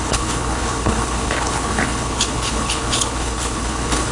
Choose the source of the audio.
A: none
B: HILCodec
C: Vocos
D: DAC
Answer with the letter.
B